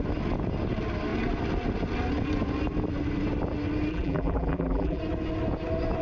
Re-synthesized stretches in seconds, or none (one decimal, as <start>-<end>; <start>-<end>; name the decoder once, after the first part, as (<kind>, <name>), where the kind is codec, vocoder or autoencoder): 3.9-5.0 (vocoder, BigVGAN v2)